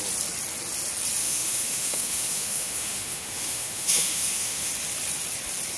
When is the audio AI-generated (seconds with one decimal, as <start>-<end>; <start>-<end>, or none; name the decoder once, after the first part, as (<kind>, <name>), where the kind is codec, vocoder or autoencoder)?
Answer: 1.2-4.7 (autoencoder, DAC-VAE)